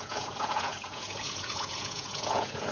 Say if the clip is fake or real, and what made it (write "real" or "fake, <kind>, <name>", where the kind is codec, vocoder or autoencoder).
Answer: fake, vocoder, Vocos